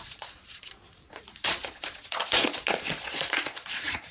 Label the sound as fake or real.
fake